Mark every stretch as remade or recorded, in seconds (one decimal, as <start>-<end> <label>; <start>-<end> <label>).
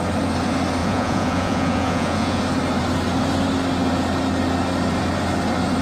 0.0-0.8 recorded; 0.8-2.4 remade; 2.4-5.8 recorded